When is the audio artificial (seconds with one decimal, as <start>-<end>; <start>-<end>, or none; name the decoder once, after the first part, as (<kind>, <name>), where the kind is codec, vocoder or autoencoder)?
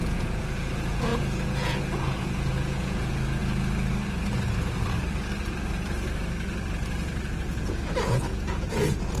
0.0-3.4 (vocoder, Vocos); 7.4-9.2